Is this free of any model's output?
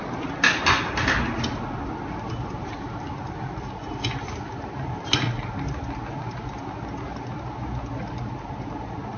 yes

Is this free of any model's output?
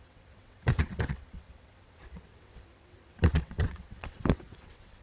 no